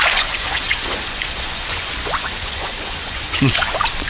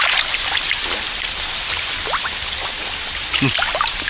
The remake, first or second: first